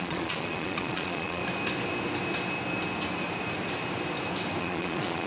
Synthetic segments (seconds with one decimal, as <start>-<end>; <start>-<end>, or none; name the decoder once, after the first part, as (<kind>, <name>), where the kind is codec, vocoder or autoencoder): 0.0-1.4 (vocoder, Vocos); 4.6-5.3